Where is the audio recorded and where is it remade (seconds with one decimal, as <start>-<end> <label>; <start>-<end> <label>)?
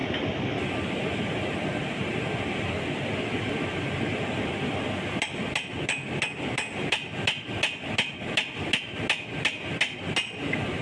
0.0-10.8 recorded